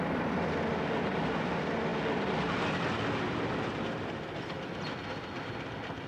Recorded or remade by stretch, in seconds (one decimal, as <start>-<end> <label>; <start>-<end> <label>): 0.0-6.1 recorded